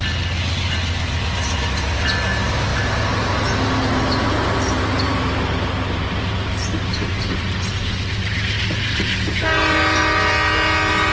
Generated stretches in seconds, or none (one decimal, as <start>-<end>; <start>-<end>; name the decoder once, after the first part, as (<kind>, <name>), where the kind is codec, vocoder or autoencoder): none